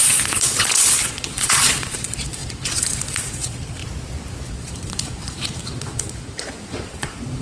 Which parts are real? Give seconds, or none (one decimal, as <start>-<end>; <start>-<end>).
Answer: 3.8-4.5